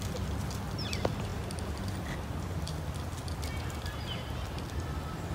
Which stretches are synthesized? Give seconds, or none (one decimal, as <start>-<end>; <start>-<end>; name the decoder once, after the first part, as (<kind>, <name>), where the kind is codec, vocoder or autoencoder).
none